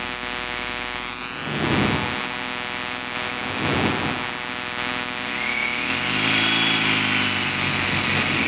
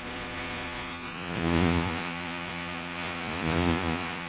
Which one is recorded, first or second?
first